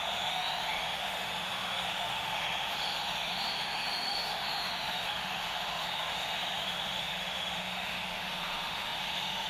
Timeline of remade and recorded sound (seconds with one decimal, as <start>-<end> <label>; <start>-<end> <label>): 0.0-9.5 remade